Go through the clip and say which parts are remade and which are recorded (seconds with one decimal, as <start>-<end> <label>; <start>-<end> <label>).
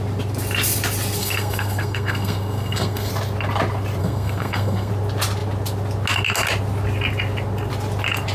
0.0-1.2 recorded; 1.2-3.1 remade; 3.1-4.0 recorded; 4.0-4.9 remade; 4.9-8.3 recorded